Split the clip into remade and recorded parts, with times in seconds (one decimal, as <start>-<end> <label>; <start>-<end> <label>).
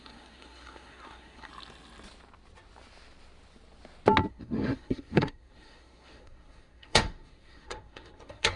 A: 0.0-1.5 remade; 1.5-4.3 recorded; 4.3-8.6 remade